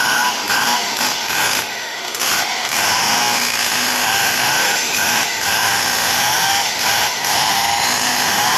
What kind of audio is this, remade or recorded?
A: remade